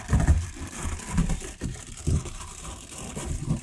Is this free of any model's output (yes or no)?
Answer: no